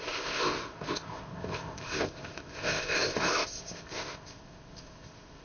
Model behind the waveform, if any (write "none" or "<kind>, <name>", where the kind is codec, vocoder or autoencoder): codec, ZipCodec